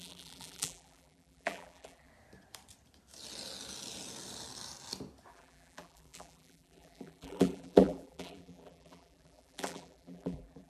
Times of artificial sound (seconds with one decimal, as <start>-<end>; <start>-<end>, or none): 0.0-2.1; 5.3-10.7